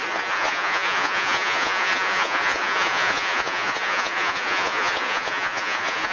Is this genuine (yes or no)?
no